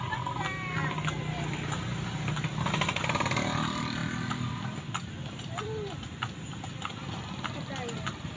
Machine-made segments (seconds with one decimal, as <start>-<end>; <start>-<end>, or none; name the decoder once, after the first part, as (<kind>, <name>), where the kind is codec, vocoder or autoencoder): none